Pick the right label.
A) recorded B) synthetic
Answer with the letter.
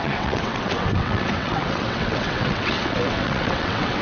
B